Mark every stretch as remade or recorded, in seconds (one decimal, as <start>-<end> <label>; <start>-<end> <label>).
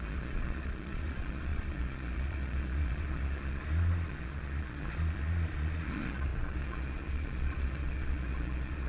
0.0-8.9 remade